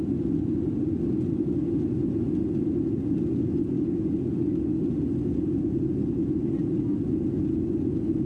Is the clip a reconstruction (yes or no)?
no